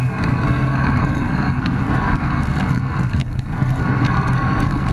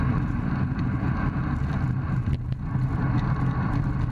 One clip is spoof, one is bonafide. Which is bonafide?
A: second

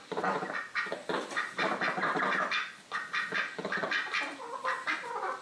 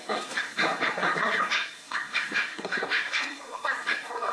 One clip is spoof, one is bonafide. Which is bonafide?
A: first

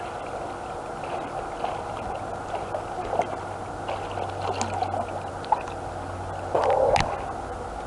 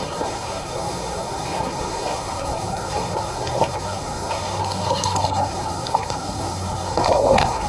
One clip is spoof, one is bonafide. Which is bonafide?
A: first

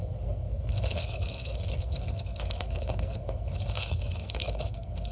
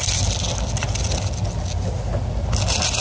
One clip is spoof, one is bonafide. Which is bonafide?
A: second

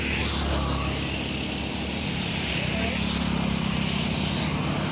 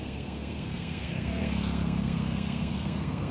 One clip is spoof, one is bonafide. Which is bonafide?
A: first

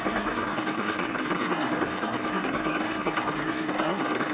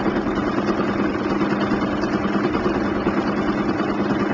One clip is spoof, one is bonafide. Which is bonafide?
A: second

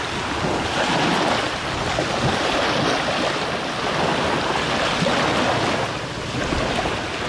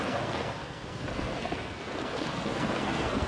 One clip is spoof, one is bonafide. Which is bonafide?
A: first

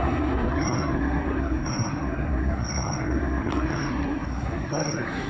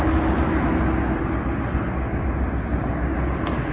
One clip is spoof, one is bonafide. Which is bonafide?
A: second